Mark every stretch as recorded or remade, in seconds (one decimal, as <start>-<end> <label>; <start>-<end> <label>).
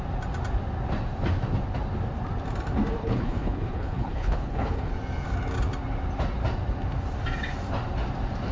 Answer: 0.0-3.0 recorded; 3.0-4.9 remade; 4.9-8.5 recorded